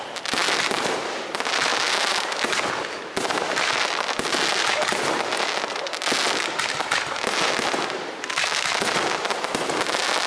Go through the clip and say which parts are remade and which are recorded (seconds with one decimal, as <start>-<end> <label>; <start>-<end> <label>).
0.0-10.3 recorded